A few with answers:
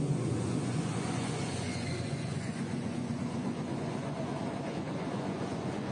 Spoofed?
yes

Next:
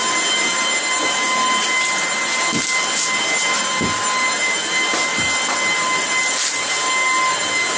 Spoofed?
no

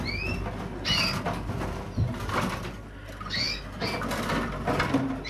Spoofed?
no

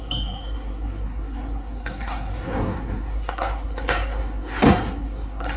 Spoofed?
yes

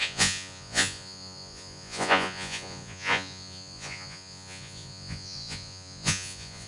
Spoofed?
yes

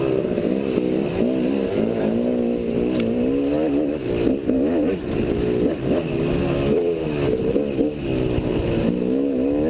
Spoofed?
no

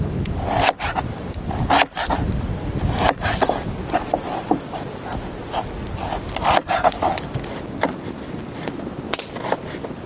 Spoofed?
no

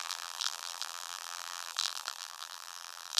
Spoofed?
yes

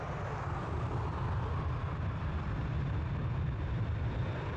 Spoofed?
yes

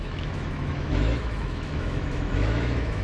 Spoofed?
yes